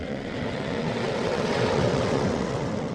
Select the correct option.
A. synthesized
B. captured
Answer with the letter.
A